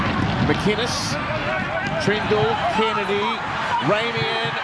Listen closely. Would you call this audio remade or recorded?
recorded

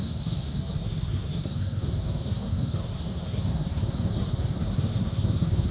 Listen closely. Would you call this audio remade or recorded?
remade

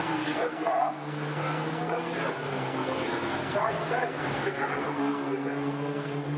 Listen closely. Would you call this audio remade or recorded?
remade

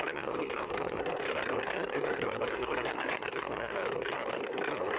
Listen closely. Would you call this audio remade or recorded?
remade